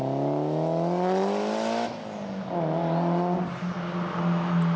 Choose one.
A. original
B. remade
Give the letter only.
A